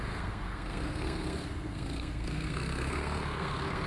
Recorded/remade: remade